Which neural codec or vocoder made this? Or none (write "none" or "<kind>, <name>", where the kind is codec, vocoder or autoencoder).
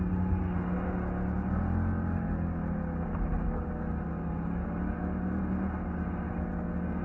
none